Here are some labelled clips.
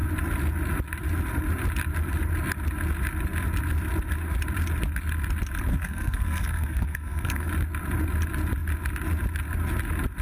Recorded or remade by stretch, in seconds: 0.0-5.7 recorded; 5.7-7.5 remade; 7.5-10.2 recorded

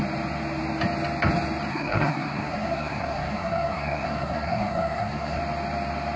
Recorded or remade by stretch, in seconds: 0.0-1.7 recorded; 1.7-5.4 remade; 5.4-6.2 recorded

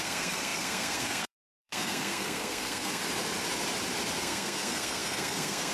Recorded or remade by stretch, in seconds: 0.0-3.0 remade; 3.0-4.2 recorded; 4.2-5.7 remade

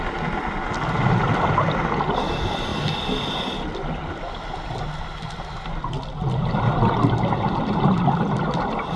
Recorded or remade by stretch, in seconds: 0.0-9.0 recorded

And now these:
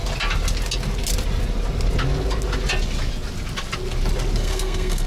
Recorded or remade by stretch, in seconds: 0.0-4.4 recorded; 4.4-5.1 remade

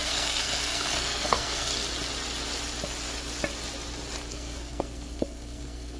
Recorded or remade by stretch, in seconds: 0.0-1.7 remade; 1.7-4.3 recorded; 4.3-6.0 remade

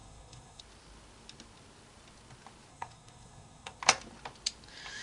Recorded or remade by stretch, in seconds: 0.0-0.6 remade; 0.6-2.7 recorded; 2.7-3.8 remade; 3.8-5.0 recorded

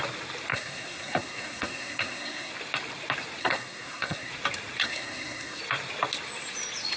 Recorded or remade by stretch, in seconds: 0.0-0.5 recorded; 0.5-2.5 remade; 2.5-3.4 recorded; 3.4-4.3 remade; 4.3-4.8 recorded; 4.8-5.6 remade; 5.6-7.0 recorded